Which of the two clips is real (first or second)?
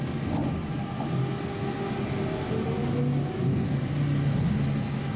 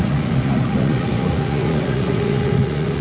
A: first